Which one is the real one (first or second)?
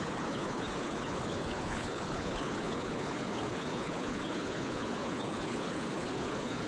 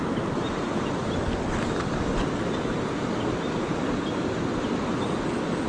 second